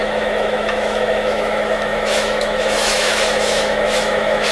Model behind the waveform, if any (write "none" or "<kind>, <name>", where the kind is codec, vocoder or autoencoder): autoencoder, DAC-VAE